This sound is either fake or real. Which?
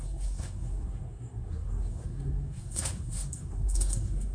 fake